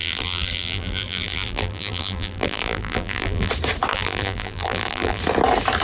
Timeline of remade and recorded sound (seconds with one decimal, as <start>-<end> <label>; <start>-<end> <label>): 0.0-3.5 remade; 3.5-3.9 recorded; 3.9-5.2 remade; 5.2-5.8 recorded